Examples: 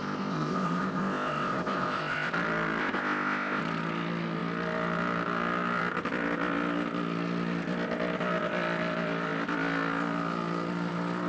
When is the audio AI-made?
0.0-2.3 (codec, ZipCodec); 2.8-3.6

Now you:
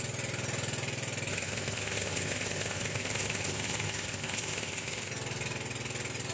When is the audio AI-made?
1.3-5.1 (codec, ZipCodec)

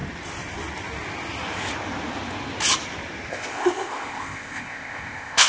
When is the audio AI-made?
3.3-5.5 (codec, ZipCodec)

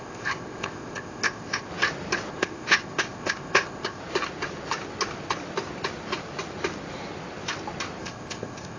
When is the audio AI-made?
0.0-1.7 (codec, ZipCodec); 2.3-4.0; 8.0-8.8

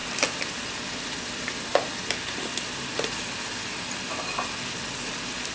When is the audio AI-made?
none

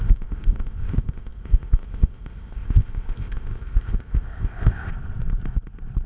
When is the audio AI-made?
0.0-4.9 (codec, ZipCodec)